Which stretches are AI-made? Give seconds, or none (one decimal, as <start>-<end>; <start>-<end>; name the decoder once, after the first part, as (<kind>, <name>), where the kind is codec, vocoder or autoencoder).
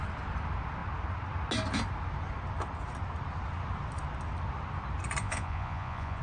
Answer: 5.2-6.2 (vocoder, Vocos)